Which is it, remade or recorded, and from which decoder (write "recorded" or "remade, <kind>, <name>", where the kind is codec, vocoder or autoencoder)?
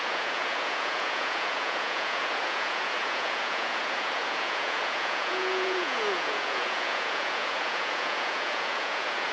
remade, vocoder, Vocos